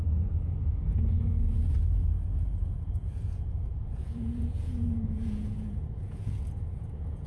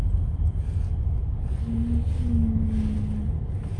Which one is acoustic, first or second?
second